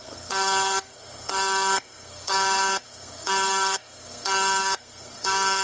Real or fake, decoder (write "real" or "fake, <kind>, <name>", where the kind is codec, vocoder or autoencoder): fake, codec, SNAC